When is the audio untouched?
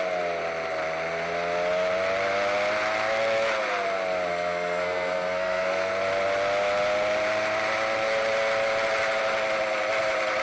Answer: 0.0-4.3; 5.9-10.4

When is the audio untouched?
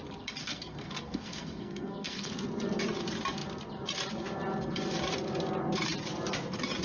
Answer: 0.0-0.4; 2.3-6.8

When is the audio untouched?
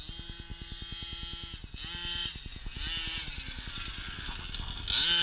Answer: 0.0-5.2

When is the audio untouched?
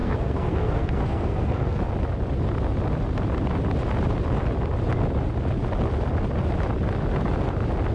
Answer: 1.8-7.9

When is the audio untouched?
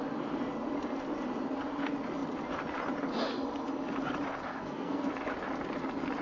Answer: 0.0-4.5; 5.1-6.2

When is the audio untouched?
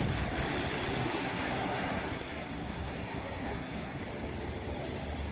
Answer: 0.0-0.9; 4.0-5.3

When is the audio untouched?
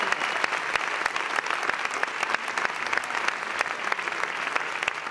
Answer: 0.0-5.1